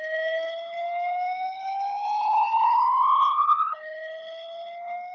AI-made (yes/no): yes